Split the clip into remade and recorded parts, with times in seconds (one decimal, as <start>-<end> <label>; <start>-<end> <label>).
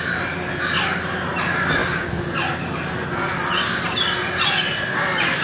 0.0-5.4 recorded